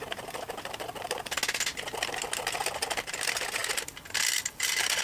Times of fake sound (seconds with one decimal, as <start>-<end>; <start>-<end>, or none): none